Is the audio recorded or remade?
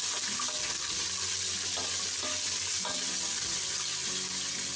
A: recorded